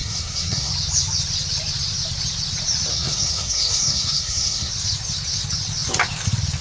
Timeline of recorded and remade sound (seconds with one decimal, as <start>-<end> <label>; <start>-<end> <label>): 0.0-0.7 remade; 0.7-2.9 recorded; 2.9-4.7 remade; 4.7-6.6 recorded